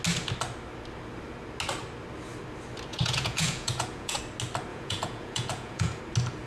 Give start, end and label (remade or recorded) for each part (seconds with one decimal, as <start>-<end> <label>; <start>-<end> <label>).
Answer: 0.0-2.9 recorded; 2.9-4.2 remade; 4.2-4.7 recorded; 4.7-6.0 remade; 6.0-6.5 recorded